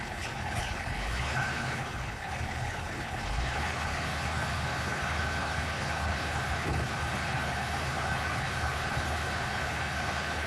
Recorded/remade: remade